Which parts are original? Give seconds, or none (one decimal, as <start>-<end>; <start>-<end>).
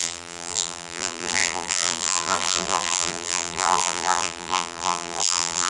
none